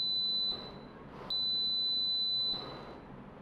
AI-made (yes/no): no